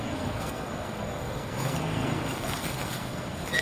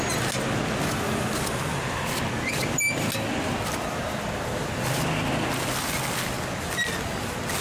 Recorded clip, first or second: second